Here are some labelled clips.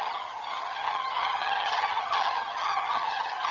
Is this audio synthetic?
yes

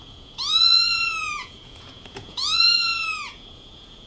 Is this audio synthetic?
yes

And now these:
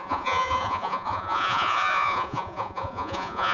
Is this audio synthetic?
yes